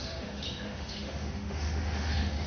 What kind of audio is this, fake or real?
fake